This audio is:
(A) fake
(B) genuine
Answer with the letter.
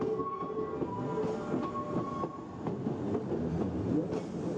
B